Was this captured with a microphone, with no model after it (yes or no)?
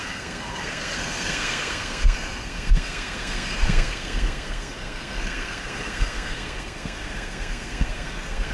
no